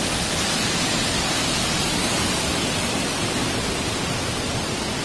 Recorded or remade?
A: recorded